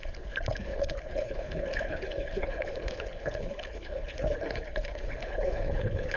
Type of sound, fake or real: fake